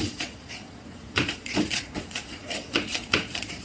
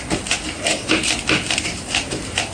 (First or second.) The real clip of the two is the second